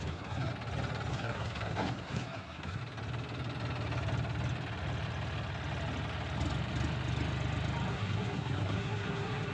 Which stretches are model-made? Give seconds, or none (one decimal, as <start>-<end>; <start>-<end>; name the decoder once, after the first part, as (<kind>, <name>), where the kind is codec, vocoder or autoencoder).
0.0-0.5 (codec, SNAC); 1.1-2.8; 7.9-9.5